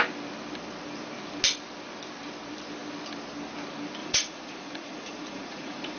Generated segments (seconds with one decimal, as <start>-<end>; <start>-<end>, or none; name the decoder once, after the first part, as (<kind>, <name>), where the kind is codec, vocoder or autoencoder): 4.0-6.0 (vocoder, Vocos)

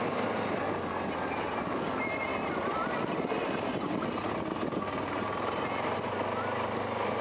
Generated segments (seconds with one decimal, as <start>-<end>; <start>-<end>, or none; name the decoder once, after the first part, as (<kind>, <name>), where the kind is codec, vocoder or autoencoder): none

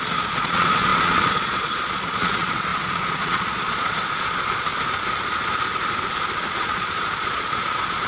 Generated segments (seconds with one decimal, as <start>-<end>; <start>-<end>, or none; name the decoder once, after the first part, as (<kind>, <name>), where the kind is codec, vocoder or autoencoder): 0.0-4.7 (vocoder, Vocos); 6.5-8.1

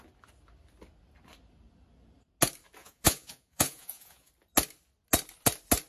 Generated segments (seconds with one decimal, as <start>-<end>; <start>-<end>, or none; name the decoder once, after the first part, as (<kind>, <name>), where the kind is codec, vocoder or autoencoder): 2.8-4.3 (vocoder, Vocos)